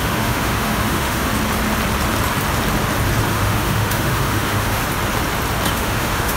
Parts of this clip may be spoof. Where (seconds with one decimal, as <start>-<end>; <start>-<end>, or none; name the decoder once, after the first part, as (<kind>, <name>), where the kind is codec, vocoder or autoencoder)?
0.0-1.3 (autoencoder, DAC-VAE); 3.3-4.8; 5.7-6.4